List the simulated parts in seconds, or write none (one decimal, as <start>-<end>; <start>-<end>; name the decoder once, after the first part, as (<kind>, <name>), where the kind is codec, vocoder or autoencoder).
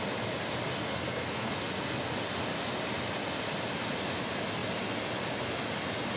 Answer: 0.9-1.5 (codec, SNAC)